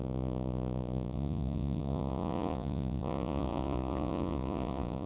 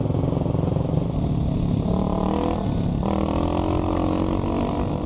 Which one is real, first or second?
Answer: second